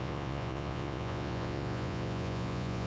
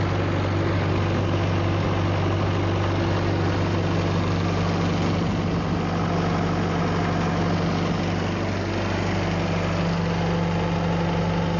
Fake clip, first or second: first